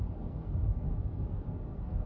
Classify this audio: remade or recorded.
remade